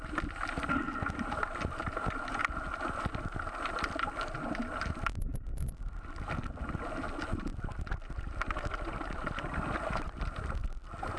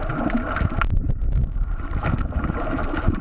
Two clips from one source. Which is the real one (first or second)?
first